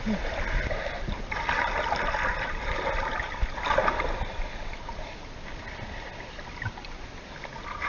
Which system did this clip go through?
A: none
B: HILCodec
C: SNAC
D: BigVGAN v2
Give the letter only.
A